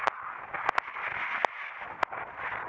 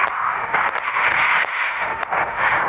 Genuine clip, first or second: first